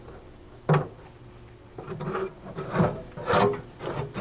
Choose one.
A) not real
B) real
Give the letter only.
B